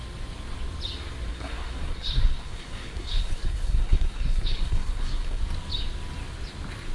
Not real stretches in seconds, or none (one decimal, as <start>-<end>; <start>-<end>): 1.3-5.4